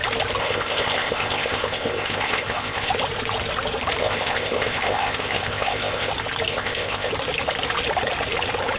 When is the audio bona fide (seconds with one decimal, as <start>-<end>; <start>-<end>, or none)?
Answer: 0.0-0.4; 2.9-4.0; 6.1-6.5; 7.1-8.8